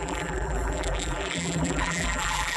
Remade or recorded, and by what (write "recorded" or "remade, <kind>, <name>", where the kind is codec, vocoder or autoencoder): remade, vocoder, BigVGAN v2